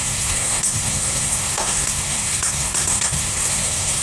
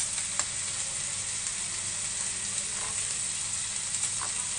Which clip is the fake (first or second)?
first